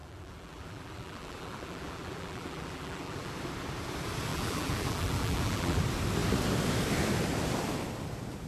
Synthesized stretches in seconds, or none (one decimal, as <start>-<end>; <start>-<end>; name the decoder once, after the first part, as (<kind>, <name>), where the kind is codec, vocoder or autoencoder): 0.0-3.3 (vocoder, BigVGAN v2); 4.3-5.8